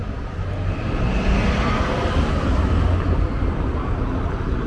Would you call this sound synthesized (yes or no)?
no